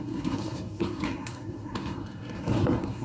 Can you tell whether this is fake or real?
fake